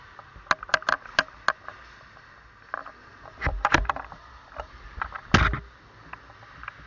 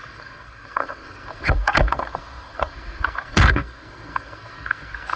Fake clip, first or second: second